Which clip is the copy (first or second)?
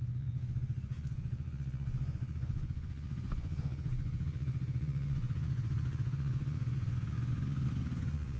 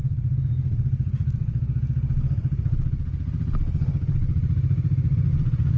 first